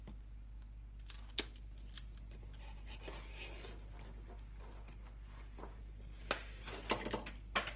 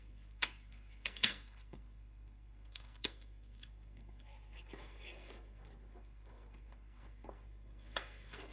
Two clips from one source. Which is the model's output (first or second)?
second